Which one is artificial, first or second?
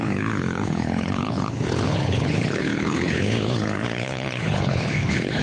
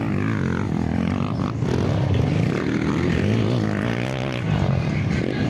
first